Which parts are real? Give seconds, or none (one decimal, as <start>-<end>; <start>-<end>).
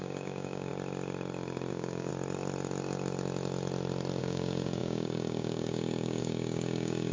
0.7-1.7; 2.1-4.2